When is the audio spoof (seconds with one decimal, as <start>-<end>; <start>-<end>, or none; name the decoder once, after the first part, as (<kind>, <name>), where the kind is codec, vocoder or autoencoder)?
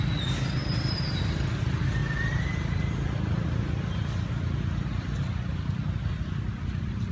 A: 0.6-1.2 (vocoder, BigVGAN v2); 2.0-2.8